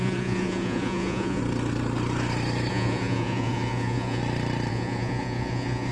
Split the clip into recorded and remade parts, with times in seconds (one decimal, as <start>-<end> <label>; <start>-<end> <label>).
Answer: 0.0-1.4 remade; 1.4-2.7 recorded; 2.7-4.2 remade; 4.2-4.7 recorded; 4.7-5.9 remade